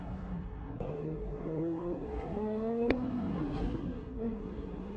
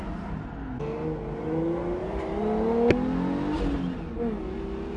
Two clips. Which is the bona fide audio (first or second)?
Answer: second